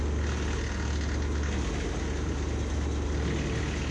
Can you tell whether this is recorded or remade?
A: recorded